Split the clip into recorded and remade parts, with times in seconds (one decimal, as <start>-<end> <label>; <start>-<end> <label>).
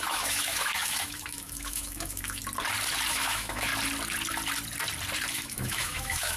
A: 0.0-2.4 remade; 2.4-3.1 recorded; 3.1-3.7 remade; 3.7-5.3 recorded; 5.3-6.4 remade